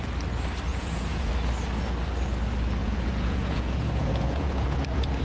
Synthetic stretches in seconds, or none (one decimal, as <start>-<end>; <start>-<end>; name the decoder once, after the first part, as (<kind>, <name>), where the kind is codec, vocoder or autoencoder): 0.7-1.3 (vocoder, Vocos); 2.8-4.8